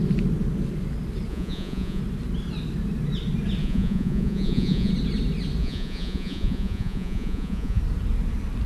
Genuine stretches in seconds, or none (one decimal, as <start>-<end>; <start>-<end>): 0.0-1.3; 2.0-3.6; 4.9-5.6; 7.8-8.7